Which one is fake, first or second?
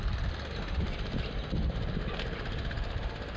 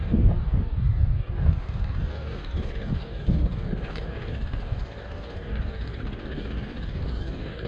second